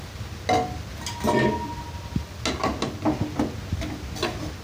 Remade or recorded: recorded